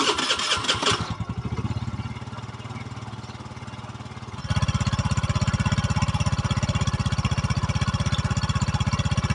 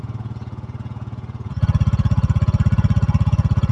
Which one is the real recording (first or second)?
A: first